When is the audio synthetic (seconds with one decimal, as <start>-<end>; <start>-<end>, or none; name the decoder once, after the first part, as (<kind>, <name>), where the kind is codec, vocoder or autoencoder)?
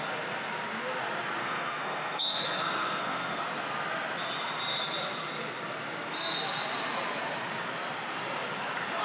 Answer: 1.4-3.4 (codec, SNAC)